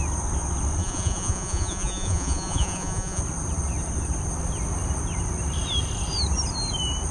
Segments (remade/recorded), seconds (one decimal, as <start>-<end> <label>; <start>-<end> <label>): 0.0-0.8 recorded; 0.8-3.2 remade; 3.2-7.1 recorded